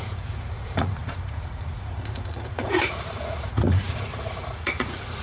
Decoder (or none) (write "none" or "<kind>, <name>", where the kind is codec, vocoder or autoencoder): vocoder, Vocos